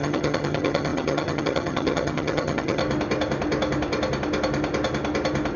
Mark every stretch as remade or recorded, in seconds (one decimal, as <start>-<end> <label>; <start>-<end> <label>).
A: 0.0-2.8 remade; 2.8-5.6 recorded